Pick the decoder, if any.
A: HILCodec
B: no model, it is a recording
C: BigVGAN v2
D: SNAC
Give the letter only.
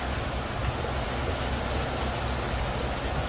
B